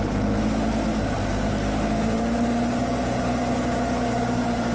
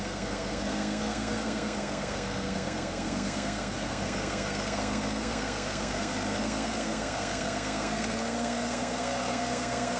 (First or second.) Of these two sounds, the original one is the first